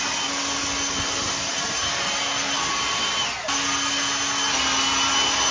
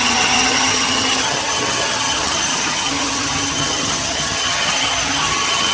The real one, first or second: first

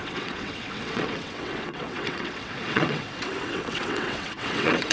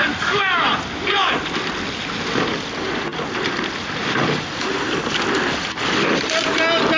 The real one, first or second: second